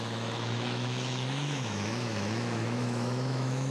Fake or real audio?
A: fake